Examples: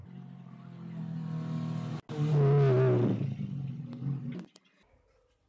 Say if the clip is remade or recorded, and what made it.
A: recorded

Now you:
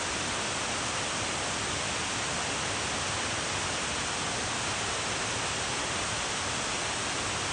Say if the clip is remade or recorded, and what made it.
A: recorded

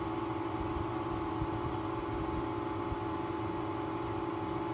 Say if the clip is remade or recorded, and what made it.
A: recorded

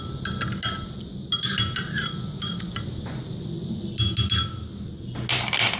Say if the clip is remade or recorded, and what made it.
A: recorded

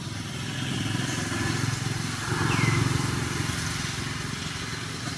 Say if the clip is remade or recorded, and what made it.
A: recorded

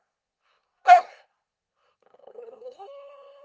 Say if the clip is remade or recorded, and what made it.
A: remade, codec, SNAC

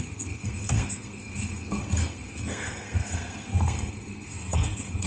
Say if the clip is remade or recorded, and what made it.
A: remade, codec, SNAC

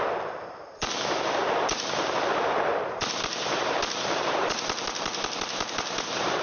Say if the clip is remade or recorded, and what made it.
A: remade, vocoder, BigVGAN v2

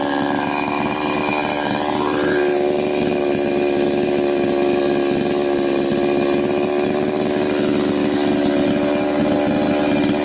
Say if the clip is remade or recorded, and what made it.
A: recorded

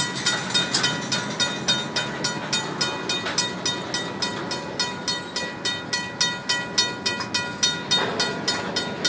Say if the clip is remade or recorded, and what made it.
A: recorded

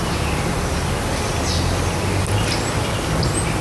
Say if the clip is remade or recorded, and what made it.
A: recorded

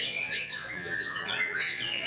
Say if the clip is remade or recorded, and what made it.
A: remade, vocoder, Vocos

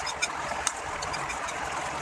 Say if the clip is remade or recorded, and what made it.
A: recorded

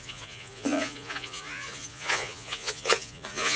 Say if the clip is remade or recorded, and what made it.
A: remade, vocoder, Vocos